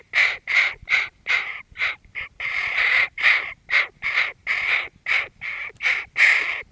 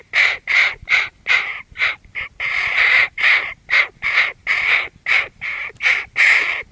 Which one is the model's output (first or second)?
first